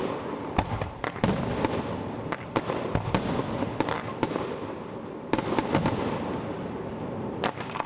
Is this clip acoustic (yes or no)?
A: yes